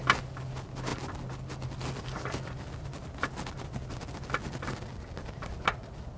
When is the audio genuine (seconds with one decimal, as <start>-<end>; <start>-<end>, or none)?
0.0-6.2